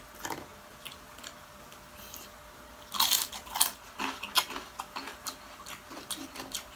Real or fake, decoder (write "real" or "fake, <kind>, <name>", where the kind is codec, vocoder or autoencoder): real